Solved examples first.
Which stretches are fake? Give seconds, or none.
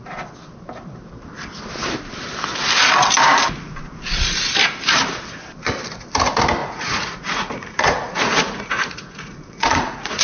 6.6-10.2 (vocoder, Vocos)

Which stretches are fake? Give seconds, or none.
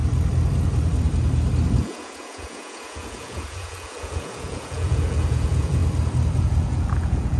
1.8-5.8 (vocoder, Vocos); 6.4-7.4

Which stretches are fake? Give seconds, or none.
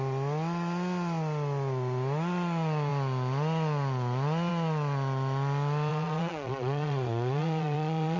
5.9-8.2 (vocoder, Vocos)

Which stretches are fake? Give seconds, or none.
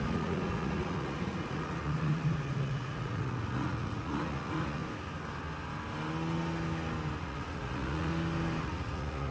0.0-4.8 (vocoder, Vocos); 7.2-8.1; 8.6-9.3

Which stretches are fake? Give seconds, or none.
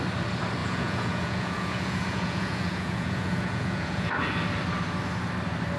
0.6-4.1 (vocoder, Vocos)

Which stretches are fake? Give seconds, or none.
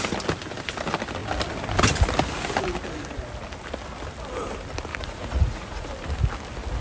4.9-5.9 (vocoder, Vocos)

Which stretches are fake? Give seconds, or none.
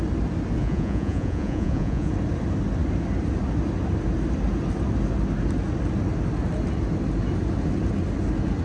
0.6-2.1 (vocoder, Vocos)